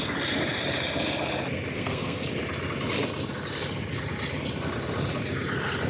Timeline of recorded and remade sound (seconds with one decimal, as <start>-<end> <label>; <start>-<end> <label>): 0.0-1.7 recorded; 1.7-2.2 remade; 2.2-5.9 recorded